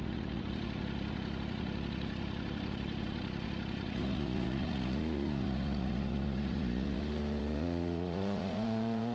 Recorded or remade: remade